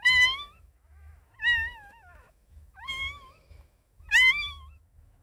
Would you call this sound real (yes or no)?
no